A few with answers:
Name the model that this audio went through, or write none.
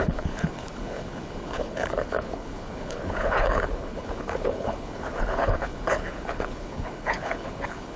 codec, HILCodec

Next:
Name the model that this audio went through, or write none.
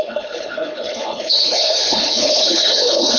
codec, HILCodec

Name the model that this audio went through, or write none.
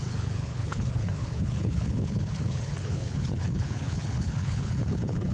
codec, HILCodec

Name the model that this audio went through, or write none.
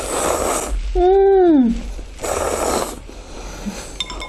none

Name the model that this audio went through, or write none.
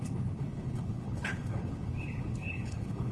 codec, HILCodec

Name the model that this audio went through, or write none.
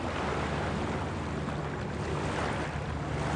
none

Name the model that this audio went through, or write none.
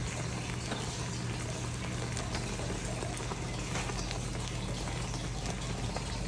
none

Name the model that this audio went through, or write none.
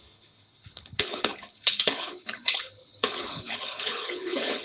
codec, HILCodec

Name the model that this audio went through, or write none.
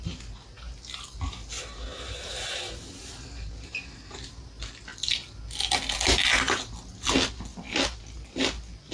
none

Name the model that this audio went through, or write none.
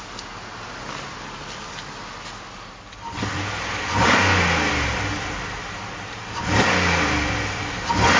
none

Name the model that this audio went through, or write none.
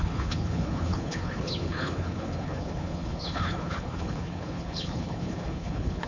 codec, HILCodec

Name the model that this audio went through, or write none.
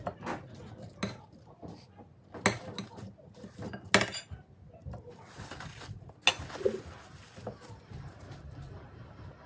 none